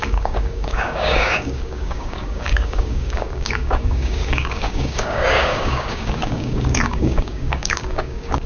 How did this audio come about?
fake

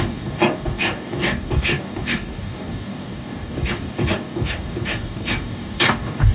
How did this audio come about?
fake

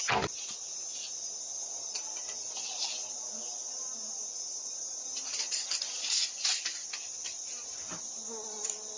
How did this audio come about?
real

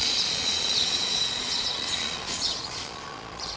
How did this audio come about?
fake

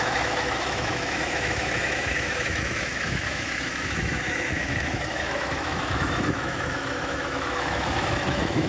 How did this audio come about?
fake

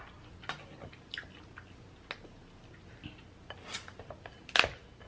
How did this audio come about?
real